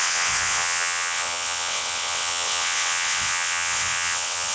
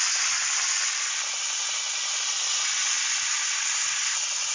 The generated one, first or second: first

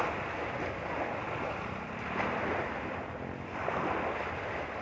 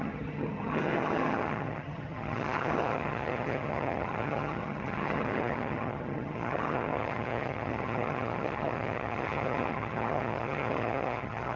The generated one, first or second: second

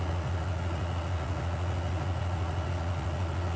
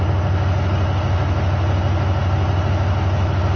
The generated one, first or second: first